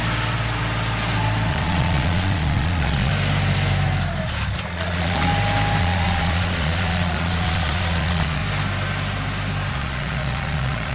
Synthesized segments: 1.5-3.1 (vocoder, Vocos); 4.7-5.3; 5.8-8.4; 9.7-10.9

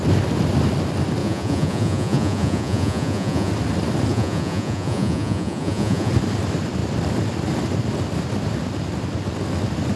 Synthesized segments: 1.2-3.5 (vocoder, Vocos); 4.1-6.1